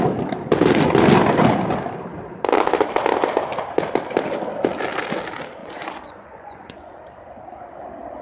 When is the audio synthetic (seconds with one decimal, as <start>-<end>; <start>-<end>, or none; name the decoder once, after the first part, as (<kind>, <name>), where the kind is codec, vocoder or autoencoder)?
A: 5.6-6.9 (vocoder, Vocos)